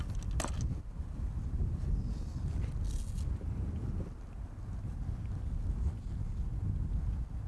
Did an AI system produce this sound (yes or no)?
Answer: no